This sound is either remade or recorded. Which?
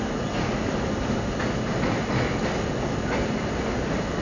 recorded